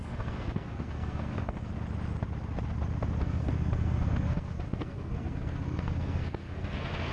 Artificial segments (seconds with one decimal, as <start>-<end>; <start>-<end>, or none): 0.0-1.7; 3.2-7.1